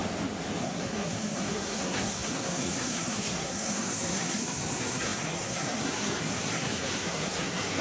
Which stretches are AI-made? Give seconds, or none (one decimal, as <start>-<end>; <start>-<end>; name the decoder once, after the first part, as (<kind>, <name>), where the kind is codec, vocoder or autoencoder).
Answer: 0.6-7.8 (codec, SNAC)

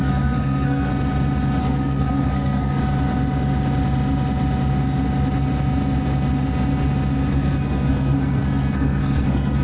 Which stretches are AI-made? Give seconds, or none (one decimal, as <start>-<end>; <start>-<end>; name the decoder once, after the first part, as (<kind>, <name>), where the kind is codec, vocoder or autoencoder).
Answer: 0.0-0.9 (codec, SNAC); 1.6-2.8; 7.3-9.6

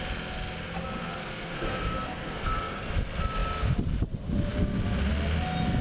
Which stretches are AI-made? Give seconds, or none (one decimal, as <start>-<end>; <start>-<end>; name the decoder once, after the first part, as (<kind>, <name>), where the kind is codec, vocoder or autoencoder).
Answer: 1.0-2.9 (codec, SNAC)

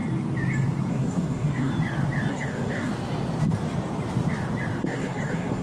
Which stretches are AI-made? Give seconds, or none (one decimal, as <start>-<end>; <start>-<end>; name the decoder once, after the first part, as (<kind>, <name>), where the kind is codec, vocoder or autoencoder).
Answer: 0.9-1.7 (codec, SNAC); 2.3-2.9; 4.8-5.6

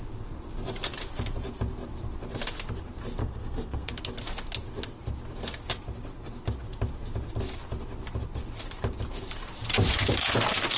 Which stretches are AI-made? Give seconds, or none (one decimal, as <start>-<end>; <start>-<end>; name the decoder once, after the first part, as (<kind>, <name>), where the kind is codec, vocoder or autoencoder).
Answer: 3.2-3.9 (codec, SNAC)

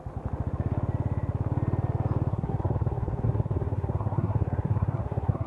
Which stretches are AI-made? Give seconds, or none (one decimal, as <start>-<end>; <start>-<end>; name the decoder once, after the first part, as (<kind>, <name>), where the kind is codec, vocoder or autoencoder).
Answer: 2.3-5.5 (codec, SNAC)

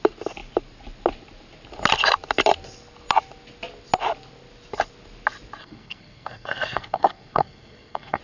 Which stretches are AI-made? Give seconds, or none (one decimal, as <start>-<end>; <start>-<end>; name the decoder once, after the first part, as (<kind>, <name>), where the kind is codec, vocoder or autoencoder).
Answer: 5.6-8.2 (codec, SNAC)

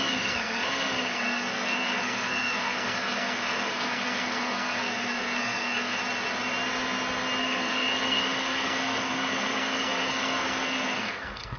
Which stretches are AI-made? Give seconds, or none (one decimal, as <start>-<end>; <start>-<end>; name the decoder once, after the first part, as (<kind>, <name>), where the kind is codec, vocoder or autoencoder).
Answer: 0.0-6.0 (codec, SNAC); 7.4-11.6